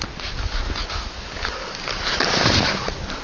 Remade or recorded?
recorded